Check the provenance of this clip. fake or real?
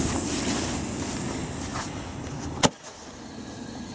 real